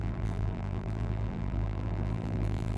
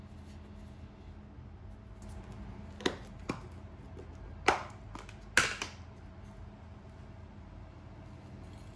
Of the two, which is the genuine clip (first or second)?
second